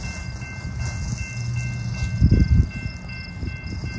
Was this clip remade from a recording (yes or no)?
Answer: no